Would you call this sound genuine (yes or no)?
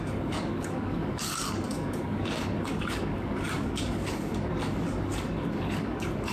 no